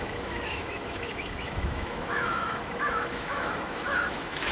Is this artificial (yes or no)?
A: yes